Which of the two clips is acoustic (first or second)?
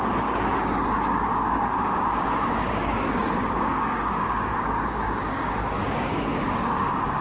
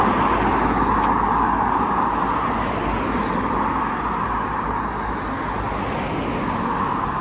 second